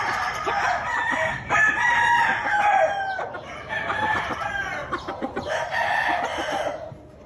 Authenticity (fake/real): real